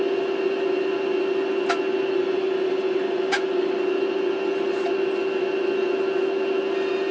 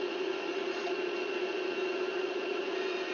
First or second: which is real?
first